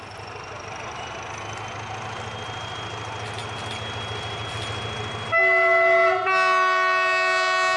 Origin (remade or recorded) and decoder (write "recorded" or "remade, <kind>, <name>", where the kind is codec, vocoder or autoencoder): recorded